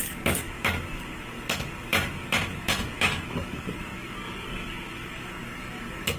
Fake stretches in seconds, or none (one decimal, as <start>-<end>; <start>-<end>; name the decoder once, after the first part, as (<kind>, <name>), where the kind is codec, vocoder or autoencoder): 0.0-6.2 (codec, DAC)